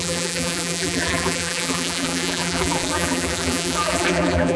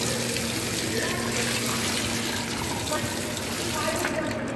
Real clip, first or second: second